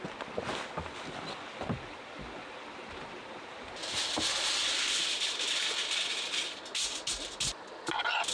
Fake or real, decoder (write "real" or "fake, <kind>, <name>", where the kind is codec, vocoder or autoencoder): real